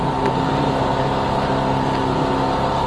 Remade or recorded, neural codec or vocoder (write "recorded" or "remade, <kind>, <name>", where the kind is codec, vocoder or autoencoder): recorded